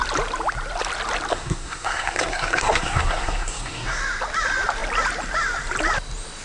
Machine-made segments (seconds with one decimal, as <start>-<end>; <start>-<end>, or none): 1.3-4.0